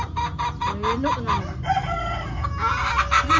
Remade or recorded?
recorded